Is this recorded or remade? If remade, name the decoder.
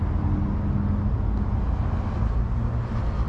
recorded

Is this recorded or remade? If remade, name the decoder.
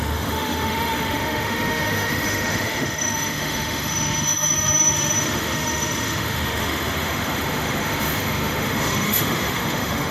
remade, autoencoder, DAC-VAE